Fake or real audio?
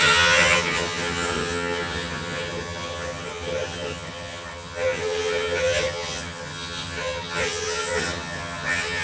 fake